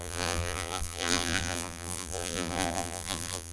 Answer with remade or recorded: remade